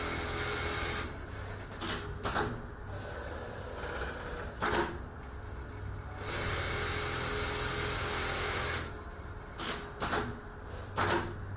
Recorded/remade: recorded